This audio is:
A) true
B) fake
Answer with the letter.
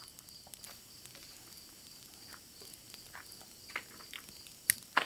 A